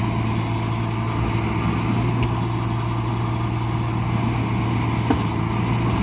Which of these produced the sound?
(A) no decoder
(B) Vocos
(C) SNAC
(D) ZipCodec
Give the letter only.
A